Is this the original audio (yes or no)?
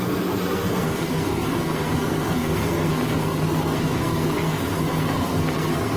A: no